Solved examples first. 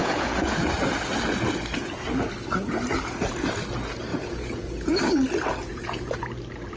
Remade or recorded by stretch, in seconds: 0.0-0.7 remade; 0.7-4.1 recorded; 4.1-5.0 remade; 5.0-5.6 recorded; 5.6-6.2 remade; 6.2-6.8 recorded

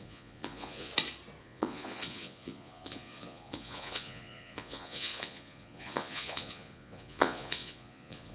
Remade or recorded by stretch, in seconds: 0.0-0.9 remade; 0.9-1.4 recorded; 1.4-8.3 remade

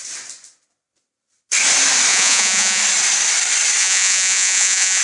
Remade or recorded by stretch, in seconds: 0.0-2.1 recorded; 2.1-2.8 remade; 2.8-3.8 recorded; 3.8-5.0 remade

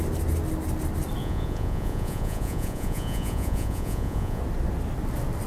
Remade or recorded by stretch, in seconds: 0.0-1.2 recorded; 1.2-4.4 remade; 4.4-5.5 recorded

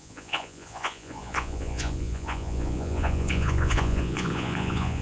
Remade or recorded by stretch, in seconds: 0.0-5.0 remade

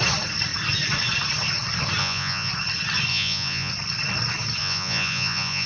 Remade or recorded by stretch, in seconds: 0.0-2.0 recorded; 2.0-2.5 remade; 2.5-3.1 recorded; 3.1-3.7 remade; 3.7-4.6 recorded; 4.6-5.7 remade

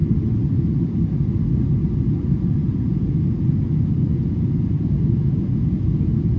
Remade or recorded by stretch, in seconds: 0.0-2.6 recorded; 2.6-6.4 remade